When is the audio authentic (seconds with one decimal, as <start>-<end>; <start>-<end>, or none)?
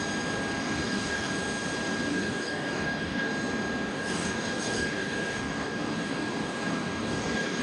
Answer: 0.0-0.6; 1.3-2.1; 3.3-3.9